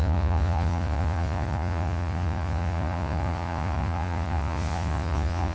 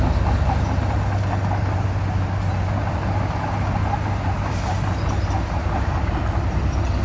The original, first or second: second